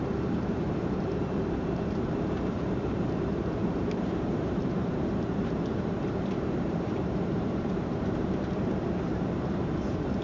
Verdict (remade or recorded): remade